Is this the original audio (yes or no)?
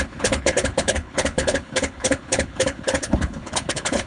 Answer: no